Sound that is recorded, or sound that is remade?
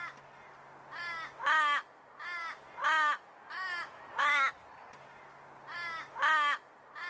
recorded